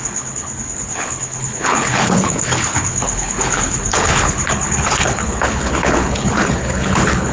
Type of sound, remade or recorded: remade